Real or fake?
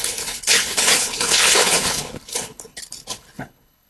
fake